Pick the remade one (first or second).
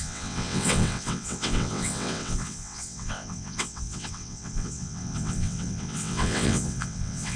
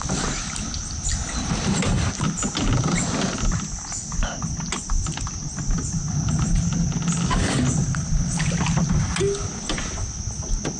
first